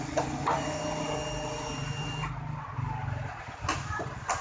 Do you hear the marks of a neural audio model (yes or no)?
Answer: no